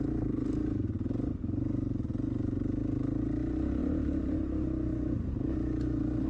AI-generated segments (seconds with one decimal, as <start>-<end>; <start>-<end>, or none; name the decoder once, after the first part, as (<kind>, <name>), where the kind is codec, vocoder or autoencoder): 3.8-4.4 (vocoder, BigVGAN v2)